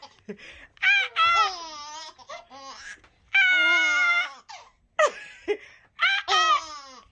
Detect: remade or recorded recorded